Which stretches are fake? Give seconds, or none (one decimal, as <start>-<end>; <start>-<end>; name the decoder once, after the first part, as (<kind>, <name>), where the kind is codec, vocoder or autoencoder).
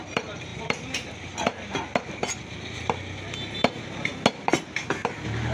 none